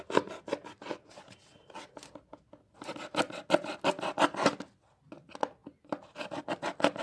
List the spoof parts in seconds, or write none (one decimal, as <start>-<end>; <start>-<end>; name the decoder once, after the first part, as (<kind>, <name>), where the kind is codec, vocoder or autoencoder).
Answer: none